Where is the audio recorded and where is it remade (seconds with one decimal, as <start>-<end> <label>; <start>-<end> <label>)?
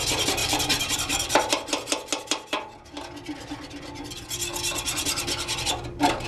0.0-0.4 recorded; 0.4-1.5 remade; 1.5-6.3 recorded